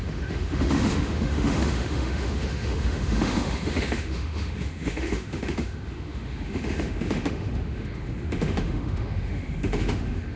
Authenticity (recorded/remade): remade